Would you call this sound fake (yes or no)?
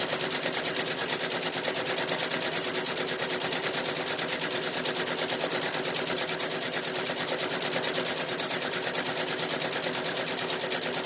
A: no